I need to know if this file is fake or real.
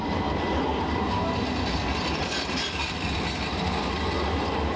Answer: real